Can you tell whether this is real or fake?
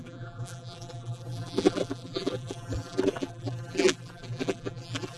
fake